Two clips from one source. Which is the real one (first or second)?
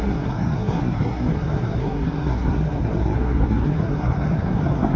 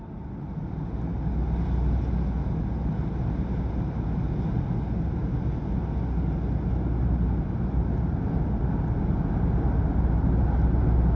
second